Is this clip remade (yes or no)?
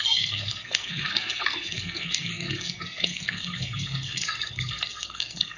yes